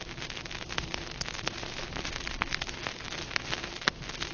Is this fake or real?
real